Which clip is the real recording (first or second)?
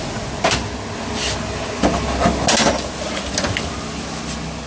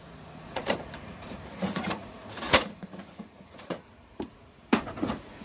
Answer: first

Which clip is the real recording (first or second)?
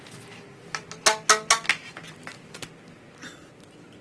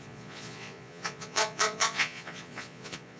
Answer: first